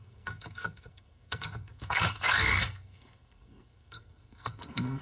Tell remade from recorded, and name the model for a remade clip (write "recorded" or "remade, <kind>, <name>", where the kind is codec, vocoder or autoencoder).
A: remade, codec, SNAC